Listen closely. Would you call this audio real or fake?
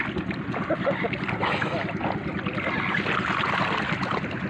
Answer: real